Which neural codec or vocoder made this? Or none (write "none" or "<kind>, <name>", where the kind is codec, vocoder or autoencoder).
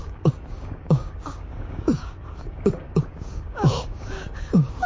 codec, DAC